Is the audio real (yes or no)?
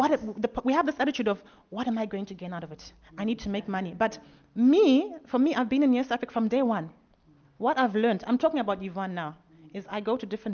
yes